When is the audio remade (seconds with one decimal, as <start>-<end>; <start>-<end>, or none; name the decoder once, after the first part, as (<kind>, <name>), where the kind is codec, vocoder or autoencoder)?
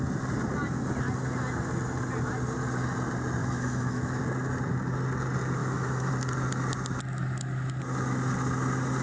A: 3.4-4.2 (autoencoder, DAC-VAE); 5.6-6.1